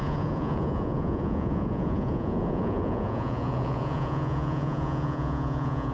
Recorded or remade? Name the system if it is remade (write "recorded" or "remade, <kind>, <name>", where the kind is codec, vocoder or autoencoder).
remade, vocoder, Vocos